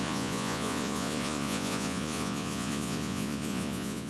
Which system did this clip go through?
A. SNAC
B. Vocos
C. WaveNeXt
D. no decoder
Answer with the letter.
B